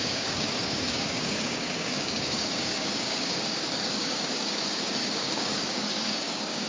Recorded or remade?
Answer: remade